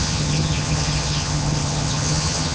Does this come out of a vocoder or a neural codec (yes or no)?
yes